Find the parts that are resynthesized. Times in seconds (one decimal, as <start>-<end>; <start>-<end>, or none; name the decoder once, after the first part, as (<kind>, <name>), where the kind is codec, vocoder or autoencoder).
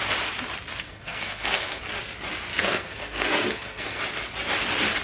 0.7-1.8 (codec, SNAC); 2.5-4.0